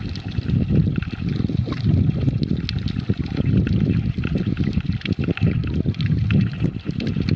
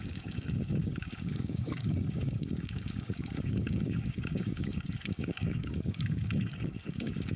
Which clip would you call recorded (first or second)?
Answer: first